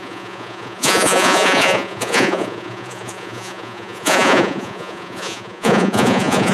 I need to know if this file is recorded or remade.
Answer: remade